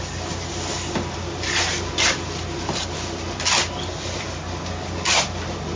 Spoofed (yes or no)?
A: no